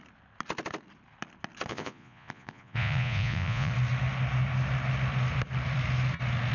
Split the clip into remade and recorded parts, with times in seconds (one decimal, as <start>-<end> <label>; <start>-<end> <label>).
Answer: 0.0-1.7 recorded; 1.7-3.7 remade; 3.7-6.5 recorded